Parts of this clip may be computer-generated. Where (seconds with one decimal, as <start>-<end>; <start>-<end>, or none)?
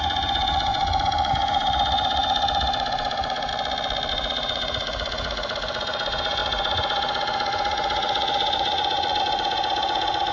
0.0-3.5; 4.1-10.3